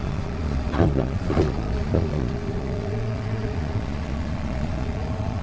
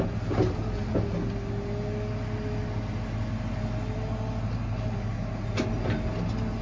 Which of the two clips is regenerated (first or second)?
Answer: first